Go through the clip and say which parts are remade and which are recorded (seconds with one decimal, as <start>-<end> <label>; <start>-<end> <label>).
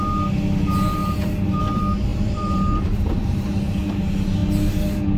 0.0-1.0 recorded; 1.0-1.6 remade; 1.6-2.1 recorded; 2.1-4.0 remade; 4.0-5.2 recorded